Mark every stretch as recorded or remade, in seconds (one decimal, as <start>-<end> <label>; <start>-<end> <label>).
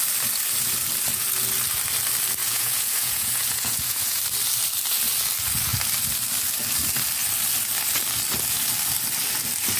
0.0-2.4 recorded; 2.4-4.2 remade; 4.2-9.8 recorded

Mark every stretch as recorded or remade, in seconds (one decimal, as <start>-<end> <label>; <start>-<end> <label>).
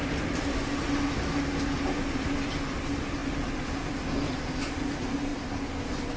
0.0-6.2 recorded